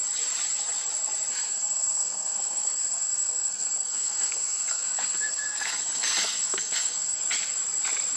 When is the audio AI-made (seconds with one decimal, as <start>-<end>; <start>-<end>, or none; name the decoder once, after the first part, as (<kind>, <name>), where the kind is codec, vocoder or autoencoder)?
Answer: 1.3-7.2 (codec, SNAC)